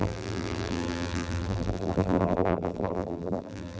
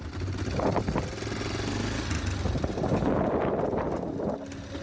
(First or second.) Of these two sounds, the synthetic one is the first